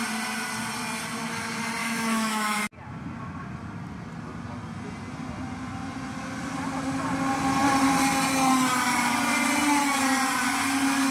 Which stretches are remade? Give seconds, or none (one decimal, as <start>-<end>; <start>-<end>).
1.8-2.6